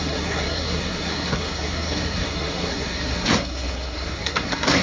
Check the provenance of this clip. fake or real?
fake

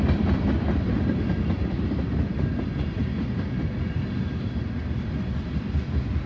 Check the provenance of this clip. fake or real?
real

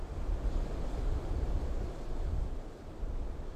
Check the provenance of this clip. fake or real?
real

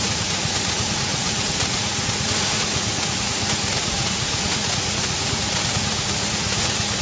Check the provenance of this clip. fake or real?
fake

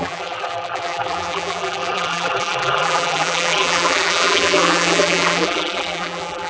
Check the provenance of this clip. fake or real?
fake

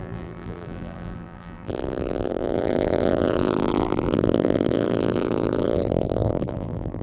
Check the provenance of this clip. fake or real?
fake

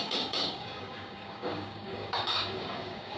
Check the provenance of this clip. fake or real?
fake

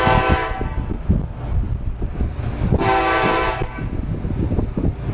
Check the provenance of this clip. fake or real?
real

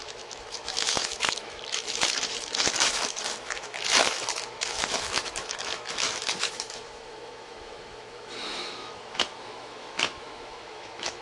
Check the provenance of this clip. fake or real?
fake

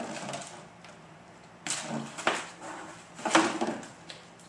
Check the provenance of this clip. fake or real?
real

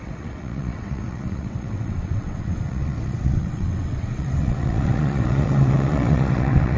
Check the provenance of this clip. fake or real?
fake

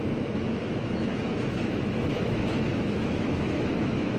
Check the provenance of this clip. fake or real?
fake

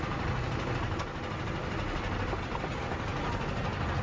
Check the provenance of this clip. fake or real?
real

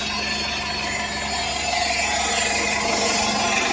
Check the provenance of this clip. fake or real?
real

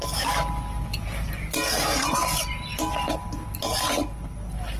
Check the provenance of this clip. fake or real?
real